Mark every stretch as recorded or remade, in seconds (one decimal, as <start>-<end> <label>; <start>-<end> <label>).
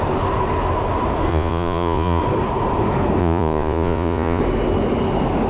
0.0-1.3 recorded; 1.3-2.2 remade; 2.2-3.2 recorded; 3.2-4.4 remade; 4.4-5.5 recorded